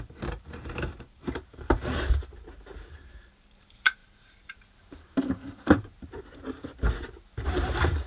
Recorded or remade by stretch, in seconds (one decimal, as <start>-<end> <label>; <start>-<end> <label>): 0.0-8.1 remade